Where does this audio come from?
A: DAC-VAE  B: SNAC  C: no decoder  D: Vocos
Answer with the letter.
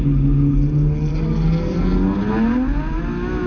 C